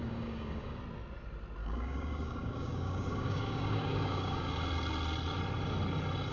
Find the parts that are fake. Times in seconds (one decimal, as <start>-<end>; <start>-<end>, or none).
0.0-0.8; 1.6-4.5